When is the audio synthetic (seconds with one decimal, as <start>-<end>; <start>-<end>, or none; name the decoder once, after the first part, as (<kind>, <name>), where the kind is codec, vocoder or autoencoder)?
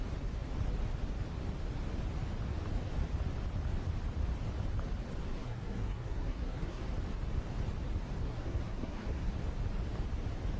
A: 5.4-6.8 (codec, SNAC); 8.2-9.3